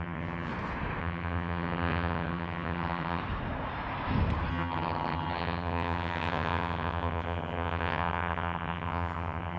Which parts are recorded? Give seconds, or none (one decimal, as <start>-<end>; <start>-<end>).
0.5-1.0; 3.2-4.5